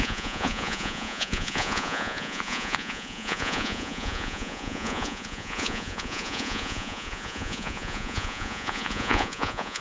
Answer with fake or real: fake